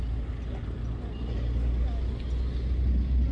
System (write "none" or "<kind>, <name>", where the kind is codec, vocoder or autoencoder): none